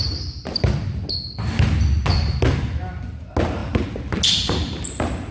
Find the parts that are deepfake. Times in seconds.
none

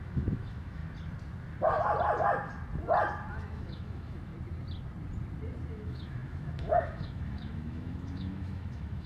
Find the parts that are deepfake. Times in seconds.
0.0-0.8 (autoencoder, DAC-VAE); 3.3-4.3; 5.7-9.1

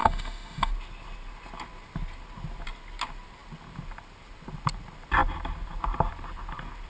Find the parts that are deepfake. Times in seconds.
0.0-0.7 (autoencoder, DAC-VAE)

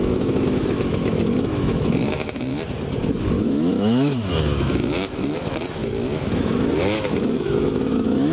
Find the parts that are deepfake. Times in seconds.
0.0-2.5 (autoencoder, DAC-VAE); 3.1-8.3

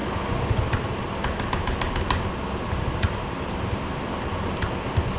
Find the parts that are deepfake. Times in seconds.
none

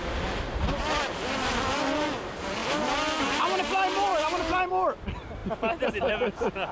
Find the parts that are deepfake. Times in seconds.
none

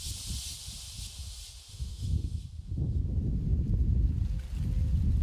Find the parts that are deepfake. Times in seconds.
1.7-2.4 (autoencoder, DAC-VAE)